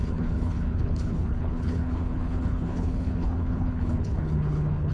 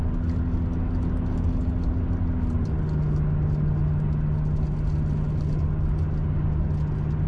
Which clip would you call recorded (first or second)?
second